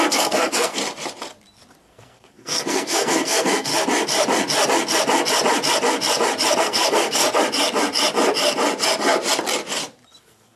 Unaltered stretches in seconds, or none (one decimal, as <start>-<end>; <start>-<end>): 0.8-1.8; 3.7-6.6; 7.2-10.2